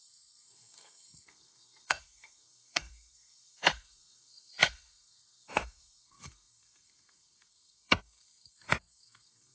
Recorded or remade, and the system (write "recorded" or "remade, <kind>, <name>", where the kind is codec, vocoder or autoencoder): remade, codec, SNAC